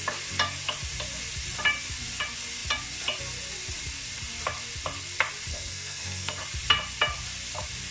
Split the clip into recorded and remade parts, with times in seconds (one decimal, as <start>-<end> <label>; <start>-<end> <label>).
0.0-5.5 recorded; 5.5-6.4 remade; 6.4-7.9 recorded